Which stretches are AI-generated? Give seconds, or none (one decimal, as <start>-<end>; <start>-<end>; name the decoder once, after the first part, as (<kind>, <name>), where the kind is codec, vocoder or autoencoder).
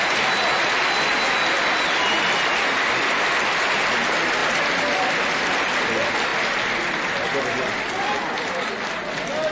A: none